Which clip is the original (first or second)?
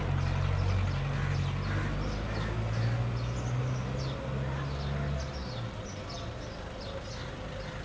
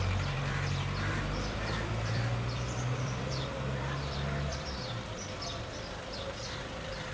first